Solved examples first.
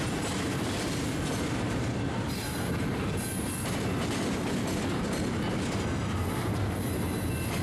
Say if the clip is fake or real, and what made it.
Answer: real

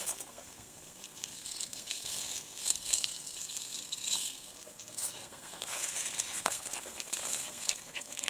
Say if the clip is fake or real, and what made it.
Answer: fake, codec, SNAC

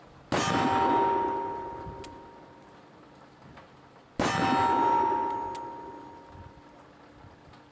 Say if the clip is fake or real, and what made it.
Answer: real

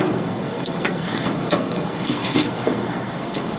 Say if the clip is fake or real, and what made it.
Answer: fake, codec, SNAC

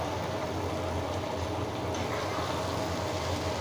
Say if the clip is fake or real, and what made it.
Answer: real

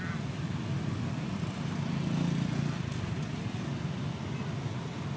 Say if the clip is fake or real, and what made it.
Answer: real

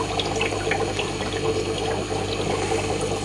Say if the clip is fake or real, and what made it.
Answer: real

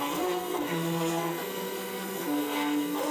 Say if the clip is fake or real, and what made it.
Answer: fake, codec, SNAC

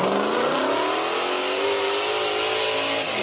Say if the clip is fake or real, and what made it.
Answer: real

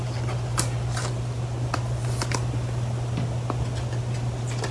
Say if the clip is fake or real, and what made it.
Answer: real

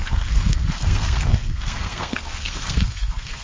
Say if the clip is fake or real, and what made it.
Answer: fake, codec, SNAC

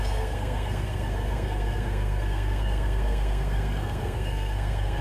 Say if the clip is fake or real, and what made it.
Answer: fake, codec, SNAC